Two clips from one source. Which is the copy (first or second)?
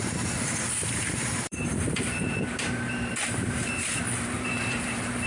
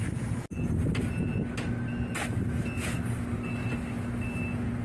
first